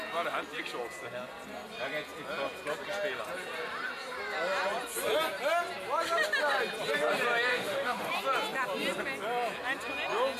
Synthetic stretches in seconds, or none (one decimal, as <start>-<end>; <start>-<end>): 7.5-8.1